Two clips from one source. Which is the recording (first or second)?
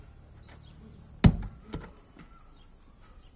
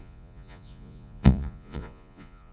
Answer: first